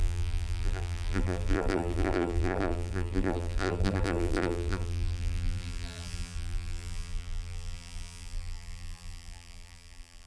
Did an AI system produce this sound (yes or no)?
yes